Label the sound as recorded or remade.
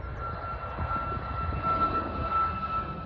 recorded